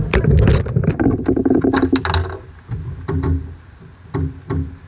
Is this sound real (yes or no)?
yes